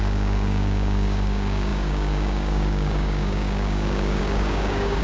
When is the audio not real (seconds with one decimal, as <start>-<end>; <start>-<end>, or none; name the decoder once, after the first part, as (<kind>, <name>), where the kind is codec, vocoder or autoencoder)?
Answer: 0.0-5.0 (codec, DAC)